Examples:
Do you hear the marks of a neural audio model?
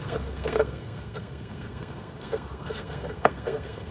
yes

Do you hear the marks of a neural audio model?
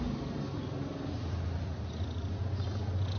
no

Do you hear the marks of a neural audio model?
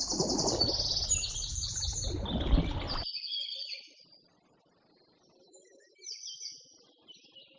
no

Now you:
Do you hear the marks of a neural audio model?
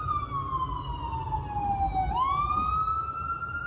no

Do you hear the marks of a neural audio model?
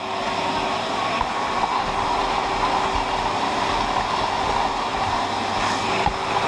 no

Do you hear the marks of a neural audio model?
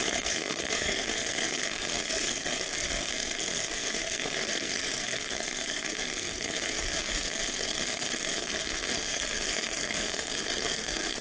yes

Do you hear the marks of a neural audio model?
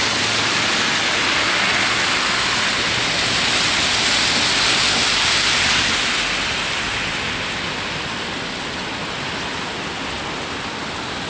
no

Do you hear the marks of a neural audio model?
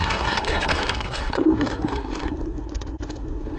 yes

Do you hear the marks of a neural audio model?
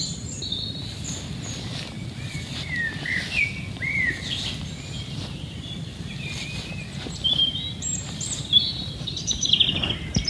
no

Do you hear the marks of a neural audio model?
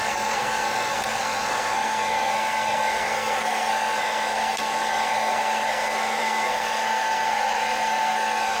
yes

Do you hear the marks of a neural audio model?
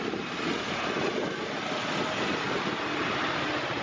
no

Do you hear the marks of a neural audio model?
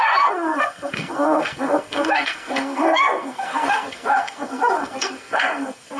yes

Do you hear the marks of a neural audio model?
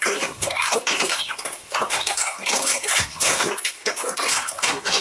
yes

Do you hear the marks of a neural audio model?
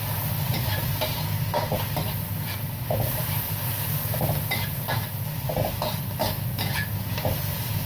no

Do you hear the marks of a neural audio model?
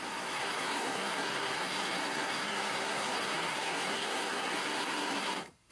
yes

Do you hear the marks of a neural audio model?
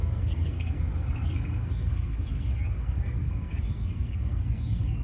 yes